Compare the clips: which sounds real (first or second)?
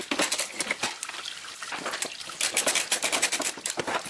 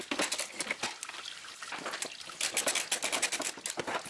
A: second